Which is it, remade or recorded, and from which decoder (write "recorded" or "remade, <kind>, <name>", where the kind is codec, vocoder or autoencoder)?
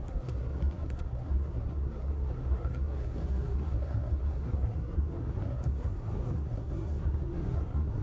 remade, codec, SNAC